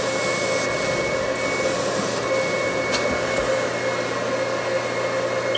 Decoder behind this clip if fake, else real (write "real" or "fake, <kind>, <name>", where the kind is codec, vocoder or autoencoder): real